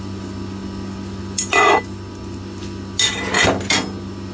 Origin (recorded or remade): recorded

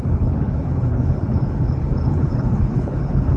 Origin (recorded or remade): remade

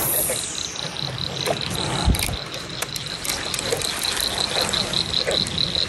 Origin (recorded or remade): recorded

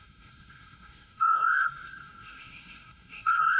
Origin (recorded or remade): remade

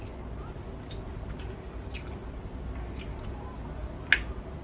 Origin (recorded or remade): recorded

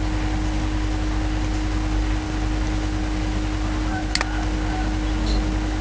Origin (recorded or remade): recorded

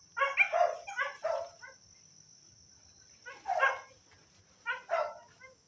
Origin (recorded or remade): recorded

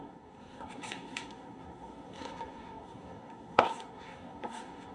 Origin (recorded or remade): remade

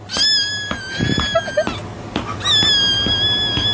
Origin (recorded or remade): recorded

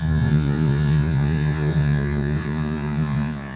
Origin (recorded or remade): remade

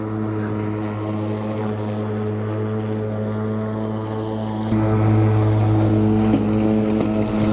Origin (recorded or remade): recorded